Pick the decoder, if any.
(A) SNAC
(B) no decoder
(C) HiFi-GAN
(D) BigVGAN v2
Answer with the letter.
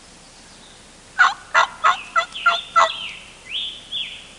B